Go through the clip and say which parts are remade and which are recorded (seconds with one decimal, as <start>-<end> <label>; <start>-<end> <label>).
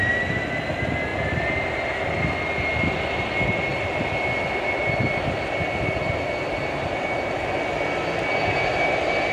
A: 0.0-9.3 recorded